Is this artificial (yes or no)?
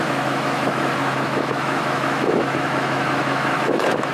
yes